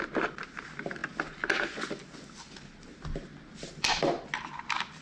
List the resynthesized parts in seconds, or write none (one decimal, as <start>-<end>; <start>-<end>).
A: none